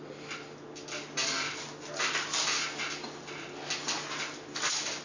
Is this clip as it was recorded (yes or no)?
yes